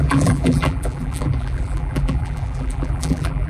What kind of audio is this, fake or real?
fake